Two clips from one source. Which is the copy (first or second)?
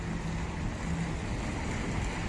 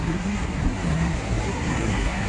second